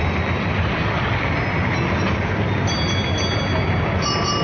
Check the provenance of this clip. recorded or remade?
recorded